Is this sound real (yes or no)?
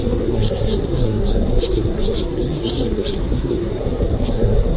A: no